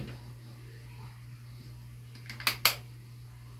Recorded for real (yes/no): yes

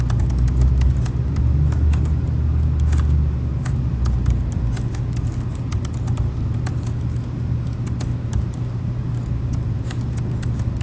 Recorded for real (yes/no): yes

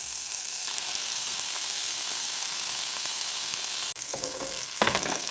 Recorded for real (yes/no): no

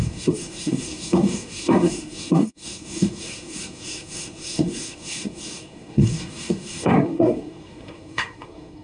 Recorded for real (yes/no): no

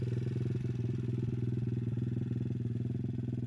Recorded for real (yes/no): yes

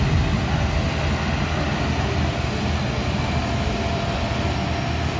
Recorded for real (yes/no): yes